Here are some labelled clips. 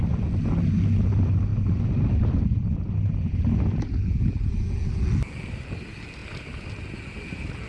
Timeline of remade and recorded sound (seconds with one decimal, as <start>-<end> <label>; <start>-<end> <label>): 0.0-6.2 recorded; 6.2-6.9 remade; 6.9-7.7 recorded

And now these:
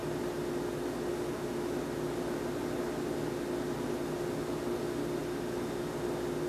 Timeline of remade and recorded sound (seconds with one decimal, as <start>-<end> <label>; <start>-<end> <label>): 0.0-6.5 recorded

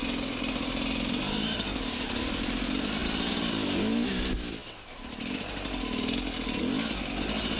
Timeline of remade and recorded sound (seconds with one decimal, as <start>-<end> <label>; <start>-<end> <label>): 0.0-2.0 remade; 2.0-7.6 recorded